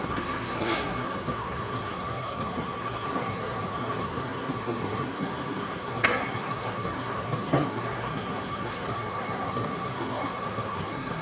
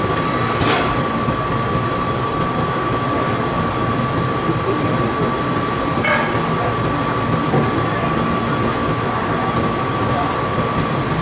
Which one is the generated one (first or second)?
first